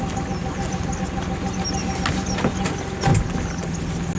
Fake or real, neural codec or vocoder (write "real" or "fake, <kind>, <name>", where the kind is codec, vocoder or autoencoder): real